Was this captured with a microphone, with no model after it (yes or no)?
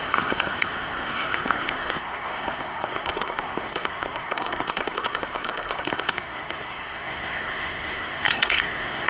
no